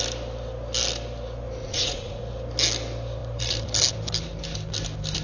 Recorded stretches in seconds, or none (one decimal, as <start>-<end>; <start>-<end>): 0.0-1.6; 2.2-5.2